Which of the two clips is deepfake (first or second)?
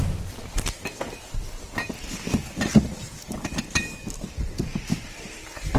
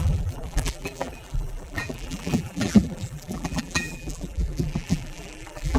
second